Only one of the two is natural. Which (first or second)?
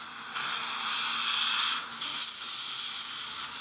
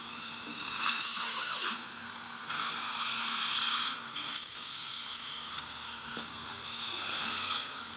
first